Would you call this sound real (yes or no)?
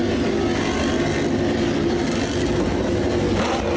yes